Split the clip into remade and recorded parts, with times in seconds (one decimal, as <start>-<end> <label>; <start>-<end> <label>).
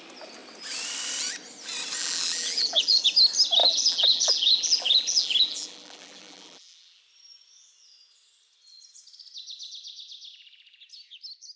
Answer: 0.0-2.0 recorded; 2.0-3.0 remade; 3.0-3.6 recorded; 3.6-7.0 remade; 7.0-11.6 recorded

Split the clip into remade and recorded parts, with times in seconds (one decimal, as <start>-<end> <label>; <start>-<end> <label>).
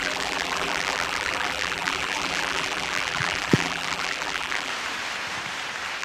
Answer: 0.0-4.7 remade; 4.7-6.0 recorded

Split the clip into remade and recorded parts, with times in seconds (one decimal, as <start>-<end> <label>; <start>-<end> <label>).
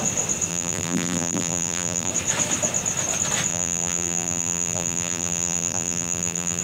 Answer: 0.0-0.5 recorded; 0.5-2.1 remade; 2.1-3.5 recorded; 3.5-6.6 remade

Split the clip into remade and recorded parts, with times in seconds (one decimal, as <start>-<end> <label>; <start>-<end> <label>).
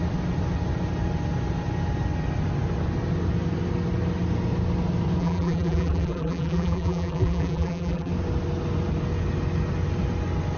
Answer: 0.0-5.2 recorded; 5.2-8.1 remade; 8.1-10.6 recorded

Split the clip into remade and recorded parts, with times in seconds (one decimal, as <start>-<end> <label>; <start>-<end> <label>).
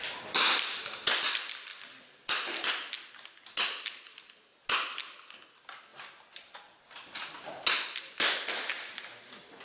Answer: 0.0-9.6 recorded